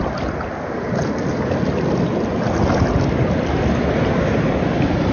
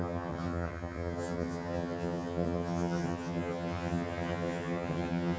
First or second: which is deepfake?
second